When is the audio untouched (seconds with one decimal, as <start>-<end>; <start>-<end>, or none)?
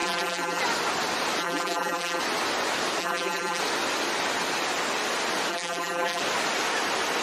0.6-1.4; 2.2-3.0; 3.6-5.5; 6.2-7.2